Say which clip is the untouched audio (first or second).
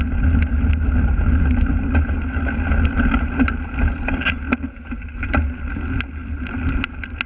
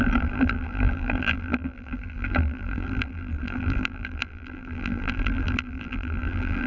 first